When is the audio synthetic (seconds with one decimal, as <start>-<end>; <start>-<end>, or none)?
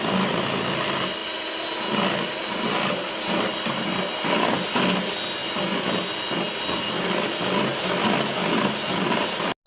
none